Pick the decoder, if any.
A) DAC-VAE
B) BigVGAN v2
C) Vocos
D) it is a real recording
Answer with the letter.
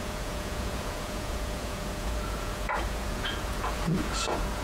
C